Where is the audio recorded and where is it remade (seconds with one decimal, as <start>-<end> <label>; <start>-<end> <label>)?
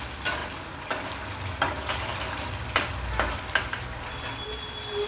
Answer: 0.0-5.1 recorded